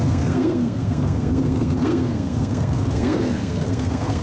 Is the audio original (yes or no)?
no